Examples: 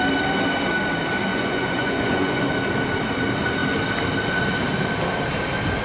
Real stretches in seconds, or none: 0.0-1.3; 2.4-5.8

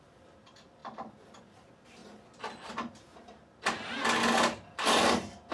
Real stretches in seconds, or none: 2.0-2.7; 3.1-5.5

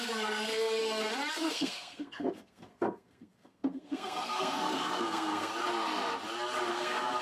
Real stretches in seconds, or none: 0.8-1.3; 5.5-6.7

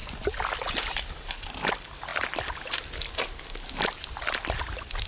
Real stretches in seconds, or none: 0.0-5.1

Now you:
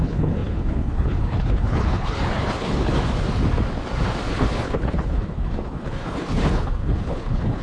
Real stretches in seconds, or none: 2.9-4.3